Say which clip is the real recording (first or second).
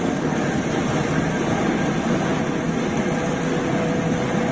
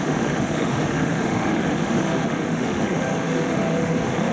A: first